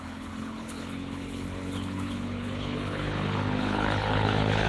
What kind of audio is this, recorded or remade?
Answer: remade